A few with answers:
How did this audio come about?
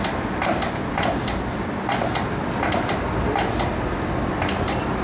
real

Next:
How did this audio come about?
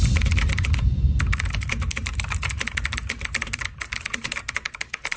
fake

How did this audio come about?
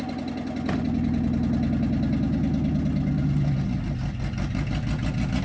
real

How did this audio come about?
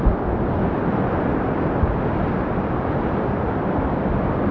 real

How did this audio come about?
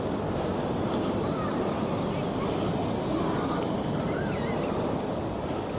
real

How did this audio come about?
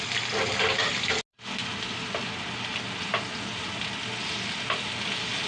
real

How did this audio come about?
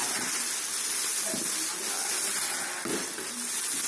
real